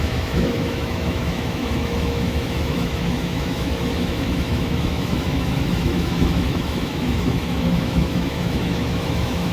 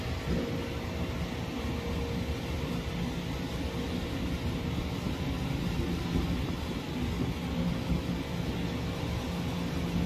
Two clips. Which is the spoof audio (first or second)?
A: first